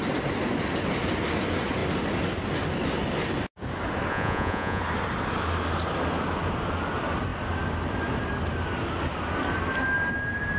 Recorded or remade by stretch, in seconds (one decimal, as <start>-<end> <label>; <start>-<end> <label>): 0.0-4.1 recorded; 4.1-4.8 remade; 4.8-10.6 recorded